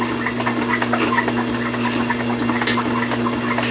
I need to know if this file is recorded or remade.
recorded